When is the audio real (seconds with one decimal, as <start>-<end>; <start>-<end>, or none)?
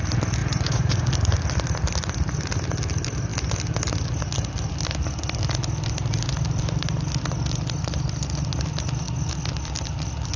0.0-0.4; 1.1-10.4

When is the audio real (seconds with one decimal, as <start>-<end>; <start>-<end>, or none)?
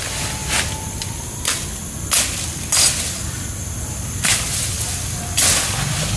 0.0-6.2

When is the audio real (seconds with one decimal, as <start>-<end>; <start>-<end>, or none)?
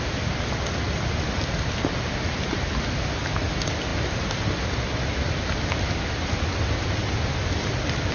0.0-8.1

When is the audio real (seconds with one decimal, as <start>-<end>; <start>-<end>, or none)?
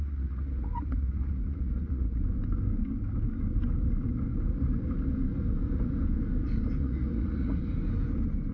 2.2-6.8; 7.6-8.5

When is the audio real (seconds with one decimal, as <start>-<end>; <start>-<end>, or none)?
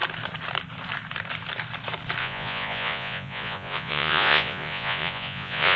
0.0-2.2